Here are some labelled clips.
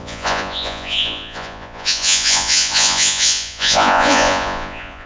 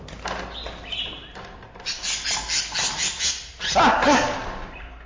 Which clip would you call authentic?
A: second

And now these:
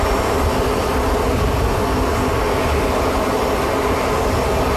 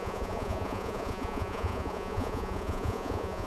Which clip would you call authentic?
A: first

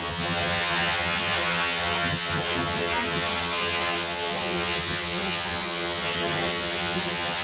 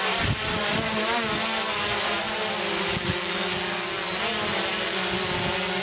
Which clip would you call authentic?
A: second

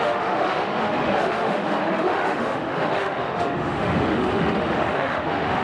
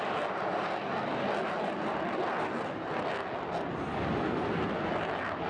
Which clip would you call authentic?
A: second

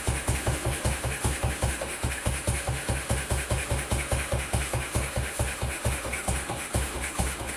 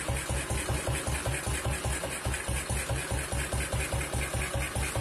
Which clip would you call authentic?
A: second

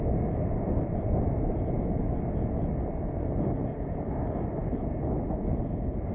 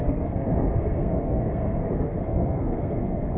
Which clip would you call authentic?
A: first